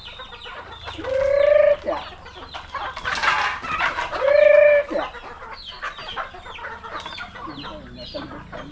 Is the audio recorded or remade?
recorded